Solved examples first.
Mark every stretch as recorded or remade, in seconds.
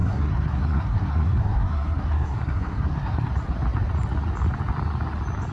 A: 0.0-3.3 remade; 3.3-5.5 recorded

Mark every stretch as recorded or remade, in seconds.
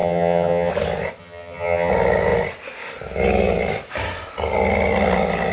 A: 0.0-0.7 remade; 0.7-1.2 recorded; 1.2-1.9 remade; 1.9-5.5 recorded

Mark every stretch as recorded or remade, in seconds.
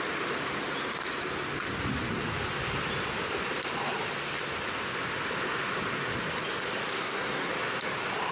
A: 0.0-6.9 recorded; 6.9-7.5 remade; 7.5-8.3 recorded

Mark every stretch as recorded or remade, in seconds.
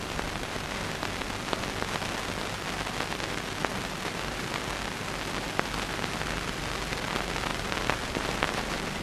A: 0.0-7.5 recorded; 7.5-9.0 remade